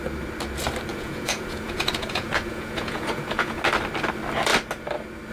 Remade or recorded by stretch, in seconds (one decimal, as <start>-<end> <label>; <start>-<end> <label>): 0.0-0.9 recorded; 0.9-3.6 remade; 3.6-5.3 recorded